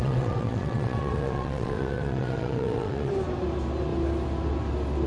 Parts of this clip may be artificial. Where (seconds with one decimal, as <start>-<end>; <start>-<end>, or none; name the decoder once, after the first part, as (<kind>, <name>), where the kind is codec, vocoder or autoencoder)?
0.0-3.1 (vocoder, WaveNeXt)